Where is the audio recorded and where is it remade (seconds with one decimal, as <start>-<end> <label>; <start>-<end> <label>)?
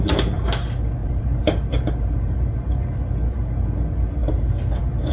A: 0.0-1.0 recorded; 1.0-2.8 remade; 2.8-4.2 recorded; 4.2-5.1 remade